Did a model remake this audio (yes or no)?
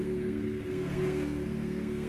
yes